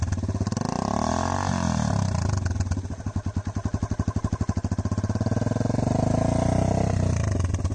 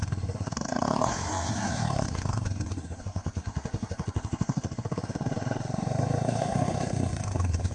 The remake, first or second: second